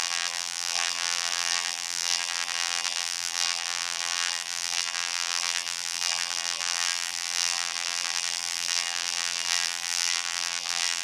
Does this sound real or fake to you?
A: fake